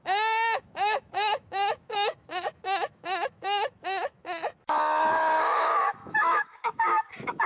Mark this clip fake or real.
fake